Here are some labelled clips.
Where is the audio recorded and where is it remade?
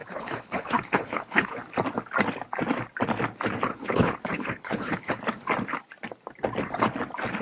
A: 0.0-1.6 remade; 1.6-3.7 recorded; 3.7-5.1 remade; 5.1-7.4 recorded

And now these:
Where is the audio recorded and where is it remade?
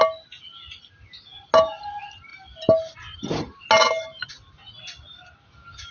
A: 0.0-5.9 recorded